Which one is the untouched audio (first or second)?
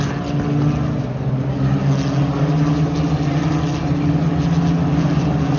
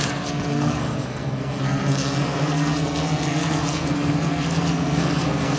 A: first